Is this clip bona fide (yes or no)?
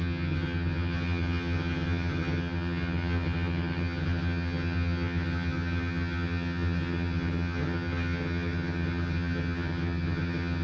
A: no